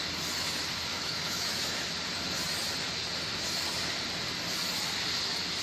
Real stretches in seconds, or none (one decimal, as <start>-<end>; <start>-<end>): 0.0-0.9; 1.9-5.6